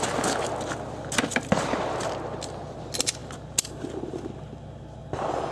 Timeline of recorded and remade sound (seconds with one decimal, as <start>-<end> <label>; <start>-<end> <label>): 0.0-5.5 recorded